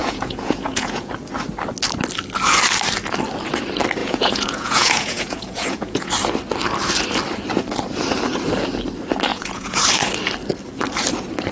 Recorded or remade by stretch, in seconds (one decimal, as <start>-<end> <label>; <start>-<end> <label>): 0.0-1.1 remade; 1.1-4.0 recorded; 4.0-6.1 remade; 6.1-9.3 recorded; 9.3-9.8 remade; 9.8-11.5 recorded